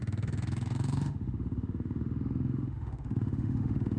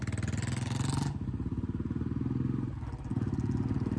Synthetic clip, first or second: first